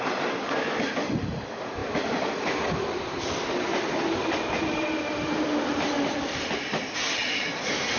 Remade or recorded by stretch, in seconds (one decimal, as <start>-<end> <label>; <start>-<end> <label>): 0.0-1.8 recorded; 1.8-6.6 remade; 6.6-8.0 recorded